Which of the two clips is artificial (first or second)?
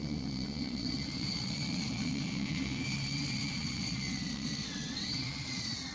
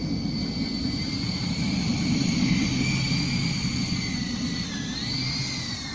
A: first